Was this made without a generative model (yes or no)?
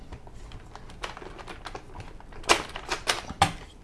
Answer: yes